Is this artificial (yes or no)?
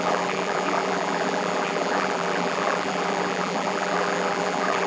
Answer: yes